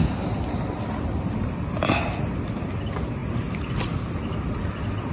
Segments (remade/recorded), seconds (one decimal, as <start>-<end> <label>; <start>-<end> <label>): 0.0-5.1 recorded